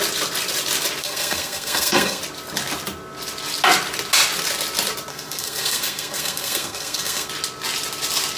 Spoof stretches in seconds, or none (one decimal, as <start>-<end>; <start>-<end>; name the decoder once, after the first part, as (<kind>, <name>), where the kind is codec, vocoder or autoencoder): 1.0-2.2 (codec, SNAC); 5.1-7.3